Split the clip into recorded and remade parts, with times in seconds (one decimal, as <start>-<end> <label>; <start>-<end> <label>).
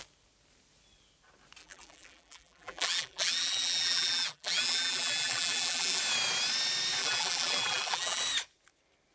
0.0-1.6 recorded; 1.6-6.0 remade; 6.0-7.0 recorded; 7.0-8.2 remade; 8.2-9.1 recorded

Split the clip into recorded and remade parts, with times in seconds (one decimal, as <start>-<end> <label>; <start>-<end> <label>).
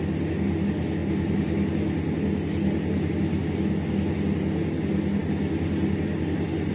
0.0-6.7 recorded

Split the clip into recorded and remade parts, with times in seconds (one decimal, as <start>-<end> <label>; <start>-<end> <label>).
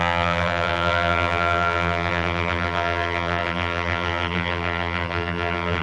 0.0-5.8 remade